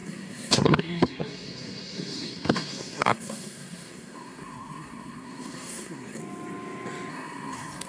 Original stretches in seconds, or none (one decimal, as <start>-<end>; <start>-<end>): 6.2-7.1